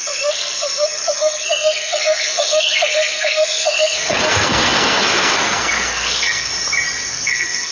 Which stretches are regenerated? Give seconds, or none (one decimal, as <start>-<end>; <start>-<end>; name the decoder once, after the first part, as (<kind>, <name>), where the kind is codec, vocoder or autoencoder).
0.0-6.5 (codec, SNAC); 7.1-7.7